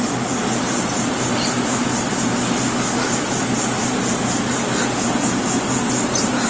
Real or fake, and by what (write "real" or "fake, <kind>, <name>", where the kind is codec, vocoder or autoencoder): real